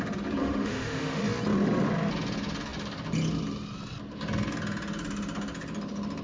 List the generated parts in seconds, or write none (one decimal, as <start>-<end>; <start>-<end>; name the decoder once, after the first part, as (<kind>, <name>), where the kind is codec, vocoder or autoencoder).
0.4-1.2 (autoencoder, DAC-VAE)